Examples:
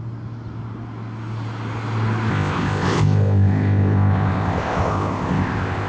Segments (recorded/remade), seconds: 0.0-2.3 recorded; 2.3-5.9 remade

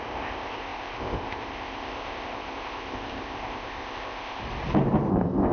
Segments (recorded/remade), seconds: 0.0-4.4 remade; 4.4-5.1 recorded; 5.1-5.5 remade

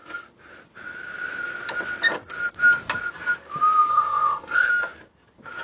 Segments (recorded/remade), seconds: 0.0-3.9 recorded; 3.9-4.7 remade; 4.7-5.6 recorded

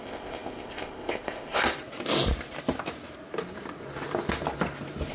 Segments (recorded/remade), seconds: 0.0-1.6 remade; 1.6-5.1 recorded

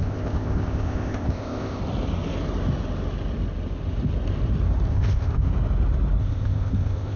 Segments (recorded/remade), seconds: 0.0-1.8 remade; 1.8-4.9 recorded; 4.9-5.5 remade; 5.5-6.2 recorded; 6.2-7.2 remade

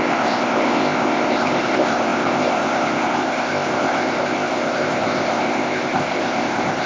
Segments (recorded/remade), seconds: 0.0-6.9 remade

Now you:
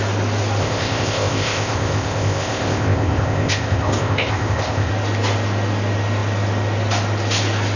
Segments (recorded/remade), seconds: 0.0-0.6 recorded; 0.6-4.9 remade; 4.9-7.8 recorded